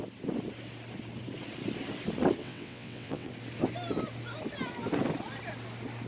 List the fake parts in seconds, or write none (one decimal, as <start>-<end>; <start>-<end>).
2.4-3.3